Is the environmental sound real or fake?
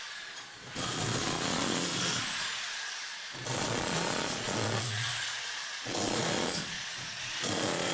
fake